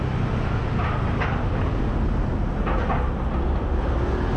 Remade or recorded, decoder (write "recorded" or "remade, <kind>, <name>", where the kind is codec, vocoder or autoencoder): recorded